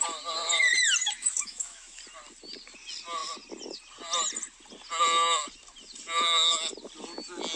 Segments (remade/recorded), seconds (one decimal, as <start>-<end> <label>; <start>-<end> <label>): 0.0-1.0 recorded; 1.0-2.0 remade; 2.0-7.6 recorded